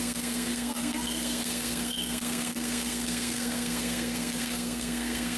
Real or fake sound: fake